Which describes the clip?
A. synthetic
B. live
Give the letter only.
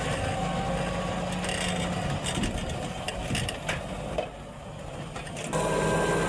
B